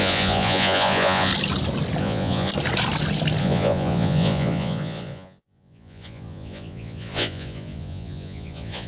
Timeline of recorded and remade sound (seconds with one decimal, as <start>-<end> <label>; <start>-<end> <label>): 0.0-1.3 remade; 1.3-2.0 recorded; 2.0-2.5 remade; 2.5-3.4 recorded; 3.4-8.9 remade